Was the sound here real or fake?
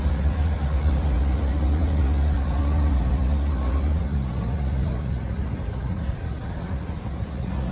fake